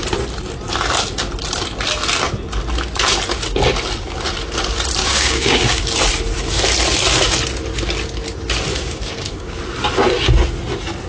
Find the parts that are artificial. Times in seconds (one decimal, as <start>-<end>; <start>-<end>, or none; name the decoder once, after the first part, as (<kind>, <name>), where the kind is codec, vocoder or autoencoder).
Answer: 5.0-5.8 (codec, DAC); 8.7-9.6